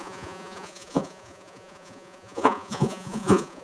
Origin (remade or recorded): remade